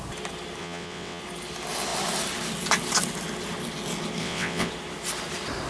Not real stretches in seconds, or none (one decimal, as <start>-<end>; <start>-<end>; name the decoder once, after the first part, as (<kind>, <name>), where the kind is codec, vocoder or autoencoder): 0.6-1.2 (vocoder, WaveNeXt); 4.2-4.7